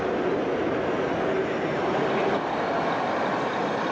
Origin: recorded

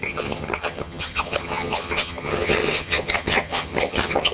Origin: remade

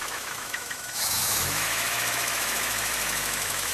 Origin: remade